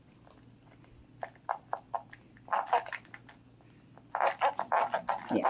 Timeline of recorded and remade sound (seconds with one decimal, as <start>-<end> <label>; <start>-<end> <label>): 0.0-5.5 recorded